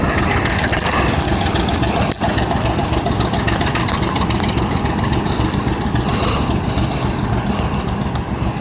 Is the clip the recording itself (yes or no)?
yes